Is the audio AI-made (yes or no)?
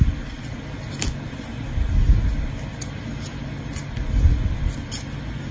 no